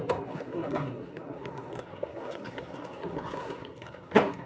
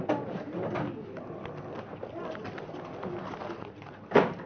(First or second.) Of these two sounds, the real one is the second